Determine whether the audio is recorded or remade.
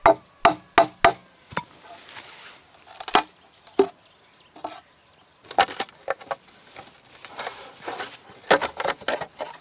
recorded